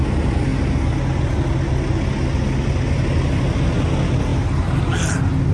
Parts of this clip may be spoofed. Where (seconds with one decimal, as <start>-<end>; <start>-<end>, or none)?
none